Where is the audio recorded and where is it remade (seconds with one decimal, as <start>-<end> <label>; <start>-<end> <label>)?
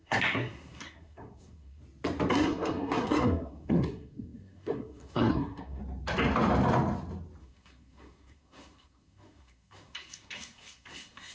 0.0-1.8 remade; 1.8-2.3 recorded; 2.3-5.8 remade; 5.8-7.4 recorded; 7.4-11.3 remade